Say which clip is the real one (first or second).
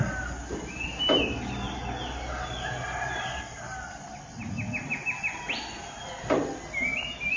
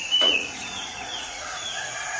first